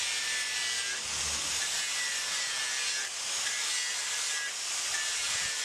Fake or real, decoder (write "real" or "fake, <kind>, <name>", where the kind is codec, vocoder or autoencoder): real